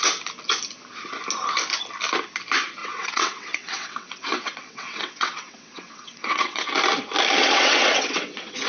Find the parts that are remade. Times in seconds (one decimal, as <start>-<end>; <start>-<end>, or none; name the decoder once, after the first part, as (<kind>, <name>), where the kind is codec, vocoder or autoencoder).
2.8-6.7 (vocoder, WaveNeXt); 7.4-8.7